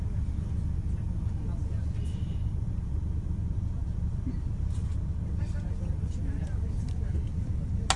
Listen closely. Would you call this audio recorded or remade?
recorded